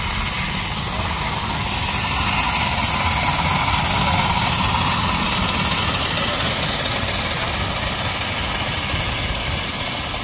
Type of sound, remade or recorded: recorded